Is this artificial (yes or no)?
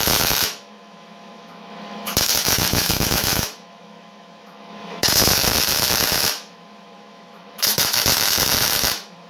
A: yes